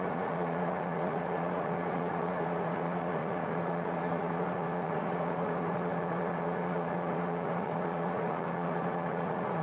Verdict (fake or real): fake